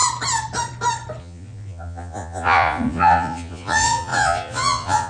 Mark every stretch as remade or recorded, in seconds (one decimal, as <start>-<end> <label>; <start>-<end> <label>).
0.0-1.2 recorded; 1.2-5.1 remade